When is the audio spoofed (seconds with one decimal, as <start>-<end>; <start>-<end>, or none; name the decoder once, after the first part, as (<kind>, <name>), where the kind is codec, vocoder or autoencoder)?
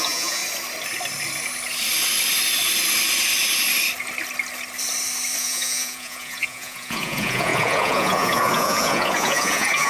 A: 0.0-0.4 (vocoder, Vocos); 5.4-9.9